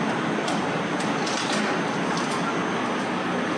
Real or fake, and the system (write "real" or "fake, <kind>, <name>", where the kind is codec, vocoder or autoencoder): real